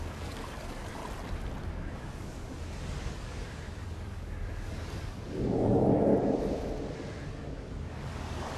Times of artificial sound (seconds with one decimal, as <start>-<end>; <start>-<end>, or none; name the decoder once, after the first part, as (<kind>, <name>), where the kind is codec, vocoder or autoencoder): 0.0-1.0 (codec, DAC); 1.6-6.1; 7.2-8.6